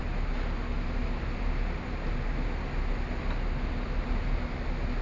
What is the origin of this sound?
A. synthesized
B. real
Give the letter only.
B